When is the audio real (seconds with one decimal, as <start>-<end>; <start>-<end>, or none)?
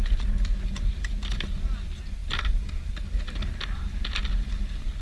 0.0-5.0